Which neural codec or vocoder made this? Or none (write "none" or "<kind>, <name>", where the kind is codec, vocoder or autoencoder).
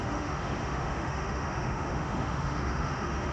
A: autoencoder, DAC-VAE